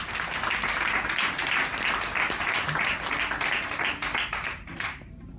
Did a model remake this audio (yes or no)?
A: no